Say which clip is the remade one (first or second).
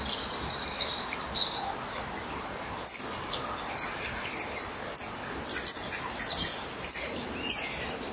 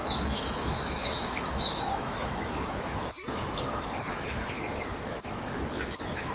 second